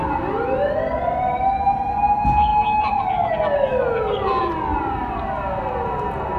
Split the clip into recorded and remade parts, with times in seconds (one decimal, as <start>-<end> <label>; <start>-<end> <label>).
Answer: 0.0-6.4 recorded